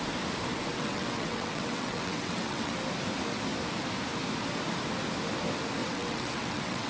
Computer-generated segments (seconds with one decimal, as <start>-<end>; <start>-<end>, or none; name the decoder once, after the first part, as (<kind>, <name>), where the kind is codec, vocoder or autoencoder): 0.7-2.7 (vocoder, WaveNeXt); 5.8-6.9